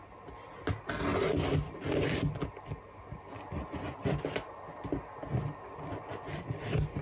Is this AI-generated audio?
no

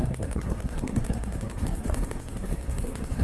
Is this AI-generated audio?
yes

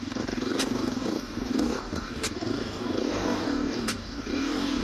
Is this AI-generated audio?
yes